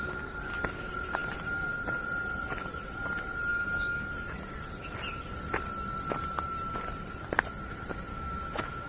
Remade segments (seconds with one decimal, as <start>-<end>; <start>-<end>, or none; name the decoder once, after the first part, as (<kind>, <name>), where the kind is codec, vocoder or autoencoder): 3.5-4.1 (autoencoder, DAC-VAE); 8.1-8.9